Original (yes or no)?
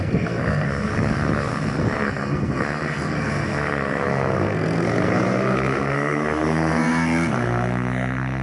no